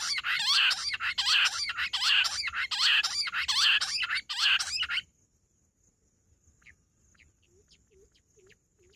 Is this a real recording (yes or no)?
yes